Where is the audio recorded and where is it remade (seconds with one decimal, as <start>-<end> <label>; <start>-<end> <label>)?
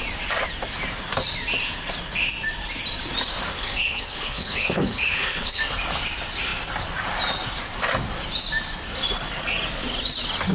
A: 0.0-3.5 recorded; 3.5-5.6 remade; 5.6-10.5 recorded